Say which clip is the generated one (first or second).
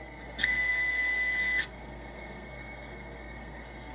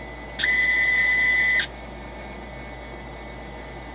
first